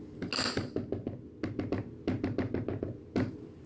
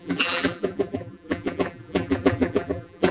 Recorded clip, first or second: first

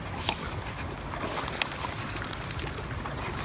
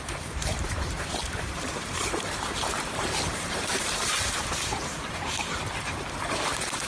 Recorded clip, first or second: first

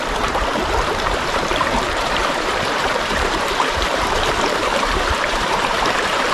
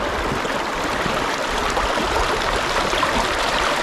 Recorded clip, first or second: second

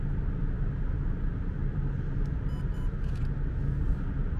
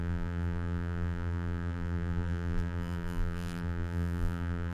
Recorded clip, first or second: first